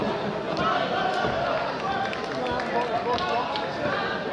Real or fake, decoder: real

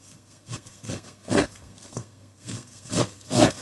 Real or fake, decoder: fake, codec, SNAC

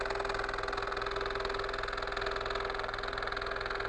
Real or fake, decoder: real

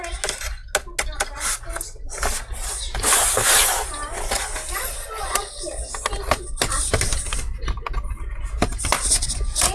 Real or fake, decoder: real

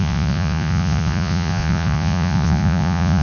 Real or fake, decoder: fake, vocoder, Vocos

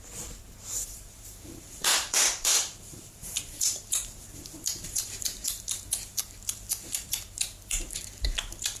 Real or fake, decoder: fake, vocoder, BigVGAN v2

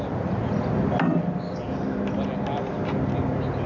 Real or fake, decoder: real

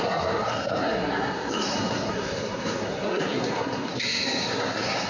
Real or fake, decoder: fake, codec, SNAC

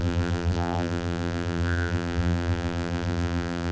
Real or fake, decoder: fake, vocoder, BigVGAN v2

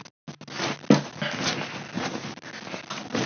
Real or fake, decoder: real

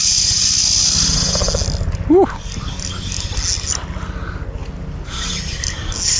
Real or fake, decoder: real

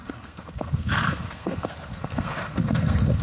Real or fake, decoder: fake, codec, SNAC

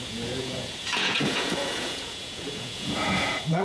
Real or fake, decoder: fake, vocoder, Vocos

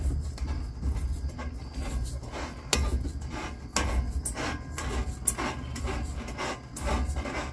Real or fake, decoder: real